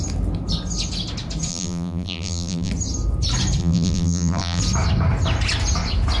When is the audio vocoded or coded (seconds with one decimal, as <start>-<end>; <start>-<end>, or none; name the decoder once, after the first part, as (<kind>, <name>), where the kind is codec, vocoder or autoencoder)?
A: 1.5-2.7 (vocoder, BigVGAN v2); 3.6-4.6